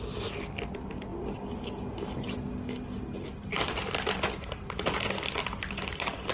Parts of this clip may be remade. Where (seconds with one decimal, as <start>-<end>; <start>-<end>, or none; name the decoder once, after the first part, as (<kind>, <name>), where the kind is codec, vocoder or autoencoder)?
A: none